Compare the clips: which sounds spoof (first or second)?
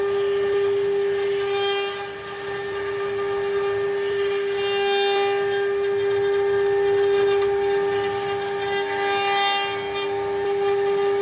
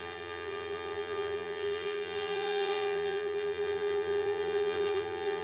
second